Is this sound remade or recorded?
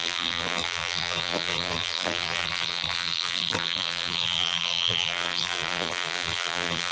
remade